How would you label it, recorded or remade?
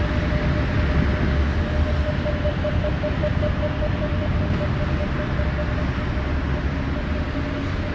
recorded